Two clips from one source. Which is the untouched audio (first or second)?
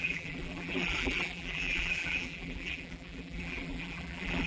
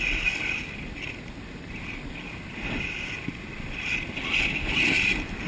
second